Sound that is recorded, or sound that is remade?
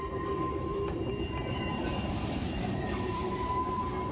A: remade